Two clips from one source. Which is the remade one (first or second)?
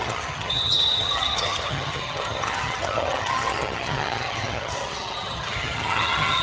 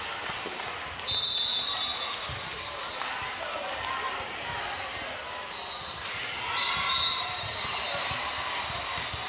first